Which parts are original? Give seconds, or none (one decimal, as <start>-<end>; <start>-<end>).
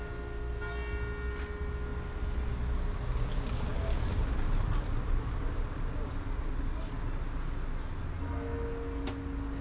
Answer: 0.0-9.6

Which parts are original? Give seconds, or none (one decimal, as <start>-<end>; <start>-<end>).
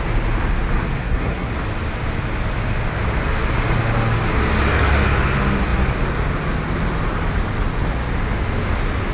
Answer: 0.0-1.0; 1.5-9.1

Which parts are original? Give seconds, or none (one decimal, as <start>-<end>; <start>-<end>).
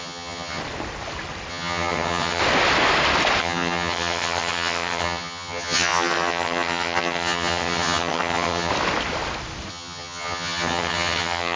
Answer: 0.6-1.5; 2.4-3.4; 8.7-9.7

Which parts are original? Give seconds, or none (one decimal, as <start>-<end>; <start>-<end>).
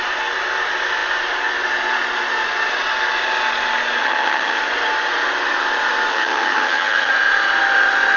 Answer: 0.0-4.0; 4.6-6.1; 7.1-8.2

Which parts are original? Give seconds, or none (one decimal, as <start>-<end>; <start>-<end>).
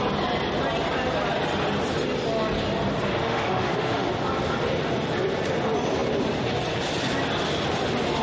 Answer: 0.0-3.1; 4.1-8.2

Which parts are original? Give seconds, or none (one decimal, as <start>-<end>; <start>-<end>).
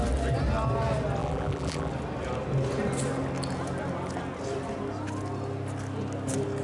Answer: 0.0-1.2; 1.9-6.6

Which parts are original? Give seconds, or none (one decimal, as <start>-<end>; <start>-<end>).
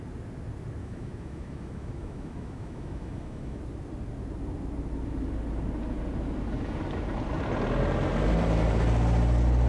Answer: 0.0-0.8; 3.6-9.7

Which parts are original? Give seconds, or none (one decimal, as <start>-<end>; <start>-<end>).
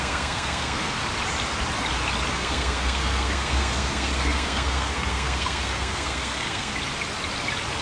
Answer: 1.0-2.3; 6.7-7.8